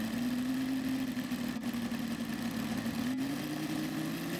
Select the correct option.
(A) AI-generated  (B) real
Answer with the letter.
B